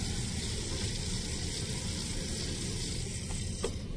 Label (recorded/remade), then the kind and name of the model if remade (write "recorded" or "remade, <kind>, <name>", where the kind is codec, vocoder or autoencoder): recorded